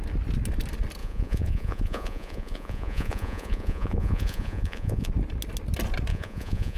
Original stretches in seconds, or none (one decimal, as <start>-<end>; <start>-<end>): 0.0-1.0; 5.1-6.1